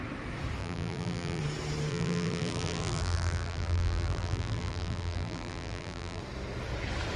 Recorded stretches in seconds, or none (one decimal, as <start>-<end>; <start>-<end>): 0.0-0.6; 1.4-1.9; 6.2-7.2